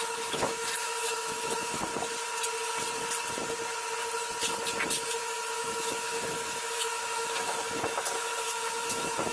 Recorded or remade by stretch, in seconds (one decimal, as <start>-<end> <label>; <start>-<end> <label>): 0.0-1.9 remade; 1.9-5.1 recorded; 5.1-9.3 remade